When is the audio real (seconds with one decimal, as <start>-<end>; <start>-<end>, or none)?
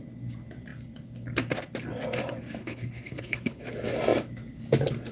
0.0-2.6; 3.6-5.1